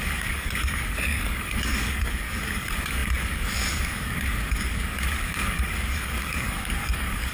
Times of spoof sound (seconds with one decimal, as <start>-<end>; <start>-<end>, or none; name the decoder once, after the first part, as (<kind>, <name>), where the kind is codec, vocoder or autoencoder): 0.0-7.3 (codec, DAC)

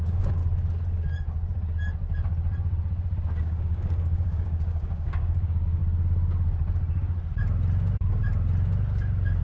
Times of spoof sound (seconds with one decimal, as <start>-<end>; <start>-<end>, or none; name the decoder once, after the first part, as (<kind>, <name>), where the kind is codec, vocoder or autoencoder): 0.0-0.4 (codec, DAC); 3.4-5.8

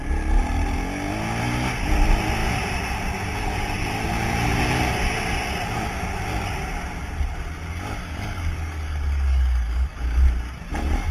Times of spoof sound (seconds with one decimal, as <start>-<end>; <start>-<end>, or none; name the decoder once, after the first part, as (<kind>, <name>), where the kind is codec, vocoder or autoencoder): 8.0-10.2 (codec, DAC)